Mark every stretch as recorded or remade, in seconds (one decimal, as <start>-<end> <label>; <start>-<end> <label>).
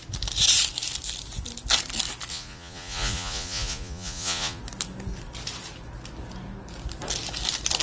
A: 0.0-2.3 recorded; 2.3-4.6 remade; 4.6-7.8 recorded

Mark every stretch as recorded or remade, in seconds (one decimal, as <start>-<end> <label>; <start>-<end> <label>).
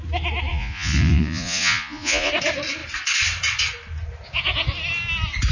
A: 0.0-0.5 recorded; 0.5-2.3 remade; 2.3-5.5 recorded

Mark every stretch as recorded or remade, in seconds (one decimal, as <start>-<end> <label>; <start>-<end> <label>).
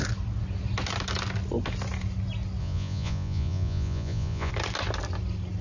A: 0.0-2.6 recorded; 2.6-4.5 remade; 4.5-5.6 recorded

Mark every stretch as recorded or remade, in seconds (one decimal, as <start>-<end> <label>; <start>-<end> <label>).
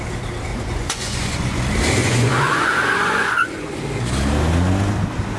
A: 0.0-0.5 recorded; 0.5-1.6 remade; 1.6-2.0 recorded; 2.0-3.7 remade; 3.7-5.4 recorded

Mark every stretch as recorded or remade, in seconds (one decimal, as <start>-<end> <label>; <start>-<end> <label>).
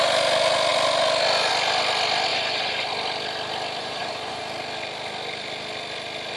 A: 0.0-2.3 recorded; 2.3-2.9 remade; 2.9-3.8 recorded; 3.8-4.4 remade; 4.4-6.4 recorded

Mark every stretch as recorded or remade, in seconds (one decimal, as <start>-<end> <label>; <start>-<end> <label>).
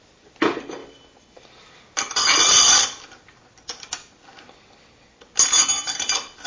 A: 0.0-6.5 recorded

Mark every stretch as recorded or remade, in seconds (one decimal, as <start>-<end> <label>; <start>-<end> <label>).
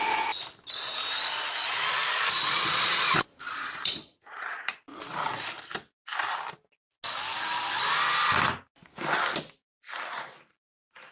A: 0.0-1.6 recorded; 1.6-4.6 remade; 4.6-11.1 recorded